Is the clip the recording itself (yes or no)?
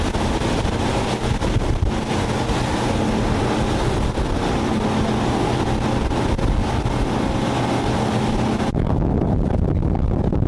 yes